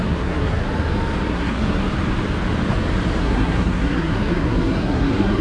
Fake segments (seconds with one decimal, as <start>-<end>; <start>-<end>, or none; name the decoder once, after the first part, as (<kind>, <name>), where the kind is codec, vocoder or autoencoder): 0.0-0.6 (codec, SNAC); 1.3-1.8; 3.2-5.4